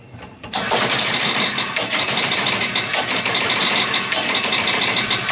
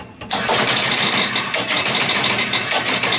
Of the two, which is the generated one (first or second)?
first